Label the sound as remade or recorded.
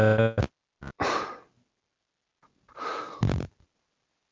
recorded